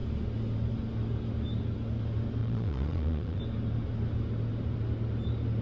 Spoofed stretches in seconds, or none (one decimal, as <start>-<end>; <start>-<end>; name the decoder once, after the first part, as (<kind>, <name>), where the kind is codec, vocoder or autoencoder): 2.4-3.4 (vocoder, Vocos)